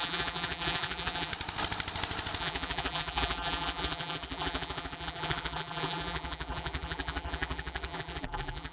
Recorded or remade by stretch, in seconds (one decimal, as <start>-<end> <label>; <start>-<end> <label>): 0.0-1.3 remade; 1.3-2.4 recorded; 2.4-8.7 remade